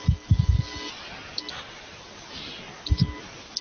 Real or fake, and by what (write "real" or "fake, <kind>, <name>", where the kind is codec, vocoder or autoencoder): real